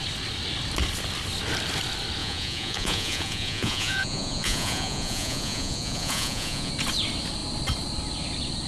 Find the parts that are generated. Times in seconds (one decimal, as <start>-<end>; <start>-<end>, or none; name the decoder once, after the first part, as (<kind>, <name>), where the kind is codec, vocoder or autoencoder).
2.2-6.7 (vocoder, Vocos)